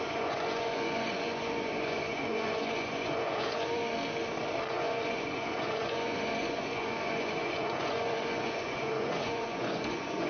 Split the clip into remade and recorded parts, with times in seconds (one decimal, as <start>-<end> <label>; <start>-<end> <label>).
0.0-3.8 remade; 3.8-4.7 recorded; 4.7-10.3 remade